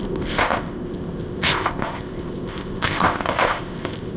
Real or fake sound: fake